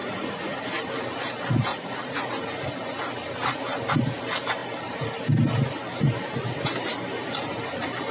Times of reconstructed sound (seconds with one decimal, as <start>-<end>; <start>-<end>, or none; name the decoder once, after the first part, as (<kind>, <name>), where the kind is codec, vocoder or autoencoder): 0.0-0.6 (vocoder, Vocos); 1.7-2.3